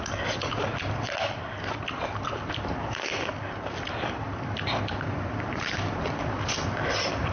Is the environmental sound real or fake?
real